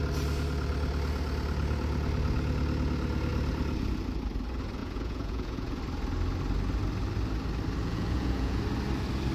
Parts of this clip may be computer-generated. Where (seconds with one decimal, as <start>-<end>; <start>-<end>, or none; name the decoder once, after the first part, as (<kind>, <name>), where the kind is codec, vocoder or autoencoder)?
4.8-5.8 (vocoder, Vocos); 7.8-8.6